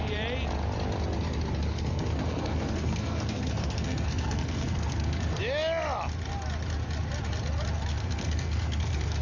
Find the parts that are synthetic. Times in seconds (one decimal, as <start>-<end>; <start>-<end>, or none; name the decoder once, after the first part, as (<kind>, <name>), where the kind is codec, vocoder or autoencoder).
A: 1.7-5.4 (codec, SNAC); 7.9-9.2